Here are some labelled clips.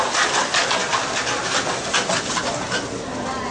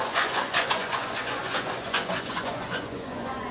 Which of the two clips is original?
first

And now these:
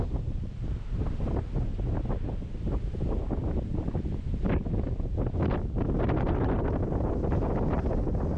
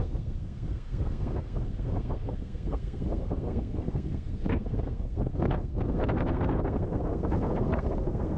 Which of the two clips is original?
first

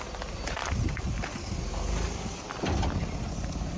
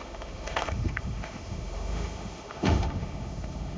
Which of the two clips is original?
first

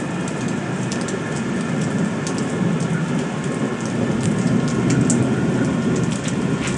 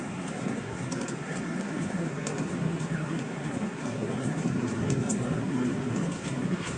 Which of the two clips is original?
first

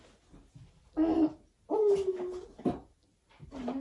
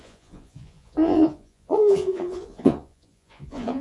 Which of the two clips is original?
first